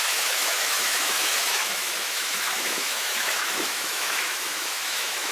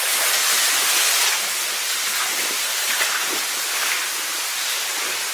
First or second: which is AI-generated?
first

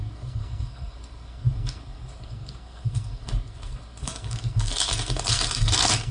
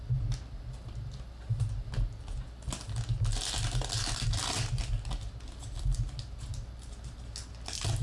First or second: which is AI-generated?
first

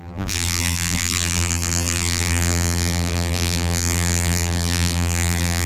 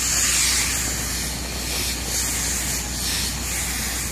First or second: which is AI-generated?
first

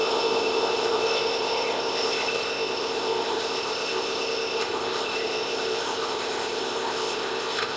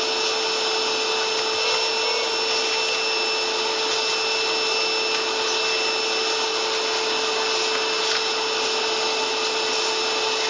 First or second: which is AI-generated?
first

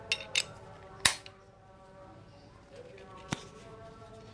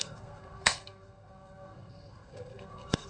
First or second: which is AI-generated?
second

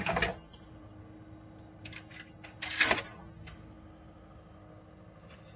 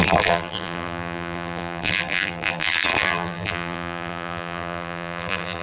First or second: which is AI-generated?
second